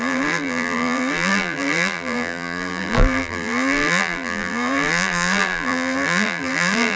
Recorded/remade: remade